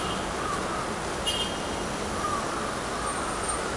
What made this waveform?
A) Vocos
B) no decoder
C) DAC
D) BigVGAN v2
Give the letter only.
B